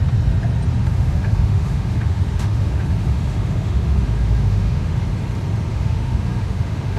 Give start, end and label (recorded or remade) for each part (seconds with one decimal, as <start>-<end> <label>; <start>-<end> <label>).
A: 0.0-0.8 recorded; 0.8-5.0 remade; 5.0-5.7 recorded; 5.7-7.0 remade